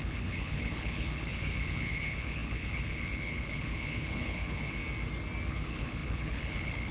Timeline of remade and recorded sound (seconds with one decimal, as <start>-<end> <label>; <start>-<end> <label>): 0.0-4.8 remade; 4.8-5.5 recorded; 5.5-6.9 remade